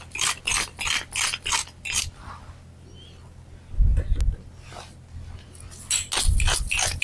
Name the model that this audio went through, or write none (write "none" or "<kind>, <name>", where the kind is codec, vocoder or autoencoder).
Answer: none